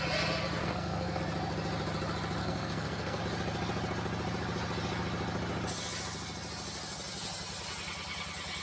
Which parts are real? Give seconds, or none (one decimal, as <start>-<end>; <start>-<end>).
0.0-0.6; 1.2-2.4; 3.2-8.6